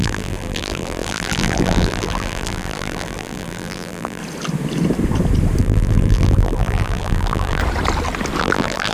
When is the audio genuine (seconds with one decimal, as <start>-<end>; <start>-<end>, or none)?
4.2-5.6; 7.6-8.4